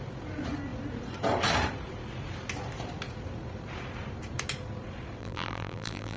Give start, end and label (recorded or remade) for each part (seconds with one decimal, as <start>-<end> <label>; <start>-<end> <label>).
0.0-5.2 recorded; 5.2-6.2 remade